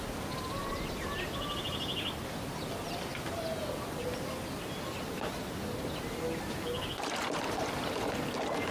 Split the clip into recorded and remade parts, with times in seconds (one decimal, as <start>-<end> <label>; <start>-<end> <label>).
0.0-8.7 recorded